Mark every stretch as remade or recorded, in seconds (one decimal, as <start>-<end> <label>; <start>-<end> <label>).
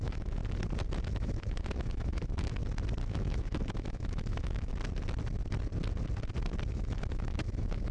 0.0-0.4 remade; 0.4-1.1 recorded; 1.1-2.6 remade; 2.6-3.1 recorded; 3.1-4.7 remade; 4.7-6.7 recorded; 6.7-7.9 remade